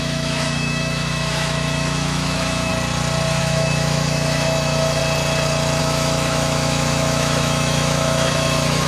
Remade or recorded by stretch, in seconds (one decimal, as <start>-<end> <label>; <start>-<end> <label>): 0.0-2.7 remade; 2.7-3.4 recorded; 3.4-5.0 remade; 5.0-5.8 recorded; 5.8-8.9 remade